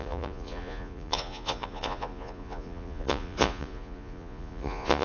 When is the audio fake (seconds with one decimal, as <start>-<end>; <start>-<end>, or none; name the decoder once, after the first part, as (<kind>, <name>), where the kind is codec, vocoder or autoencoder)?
0.0-5.0 (vocoder, Vocos)